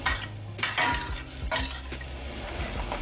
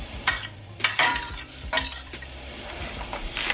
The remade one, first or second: second